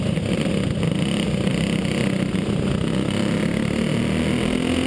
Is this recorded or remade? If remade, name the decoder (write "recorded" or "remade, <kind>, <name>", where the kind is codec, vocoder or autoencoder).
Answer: recorded